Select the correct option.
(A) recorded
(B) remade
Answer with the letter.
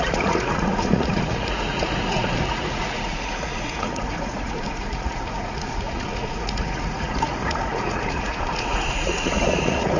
B